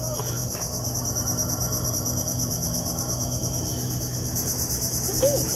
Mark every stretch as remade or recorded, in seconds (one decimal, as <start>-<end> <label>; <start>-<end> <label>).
0.0-5.6 remade